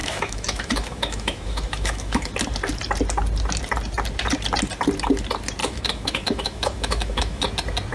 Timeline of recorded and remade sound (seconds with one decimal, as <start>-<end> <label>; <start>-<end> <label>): 0.0-2.3 remade; 2.3-5.6 recorded; 5.6-7.5 remade; 7.5-7.9 recorded